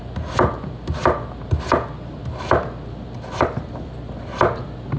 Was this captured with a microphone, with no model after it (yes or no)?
yes